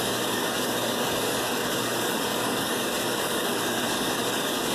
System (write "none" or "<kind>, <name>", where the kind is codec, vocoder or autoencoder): codec, DAC